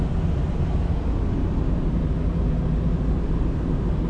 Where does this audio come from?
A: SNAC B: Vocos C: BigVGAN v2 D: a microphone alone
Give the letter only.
D